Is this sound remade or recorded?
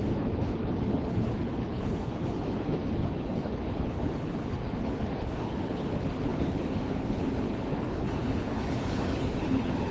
remade